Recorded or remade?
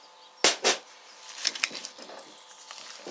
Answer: recorded